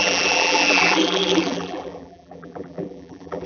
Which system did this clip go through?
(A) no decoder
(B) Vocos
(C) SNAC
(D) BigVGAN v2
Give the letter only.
D